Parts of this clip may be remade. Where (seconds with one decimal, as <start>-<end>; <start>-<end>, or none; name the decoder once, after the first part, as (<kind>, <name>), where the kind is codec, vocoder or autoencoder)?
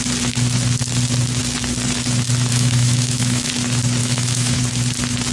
2.5-3.5 (autoencoder, DAC-VAE); 4.0-4.6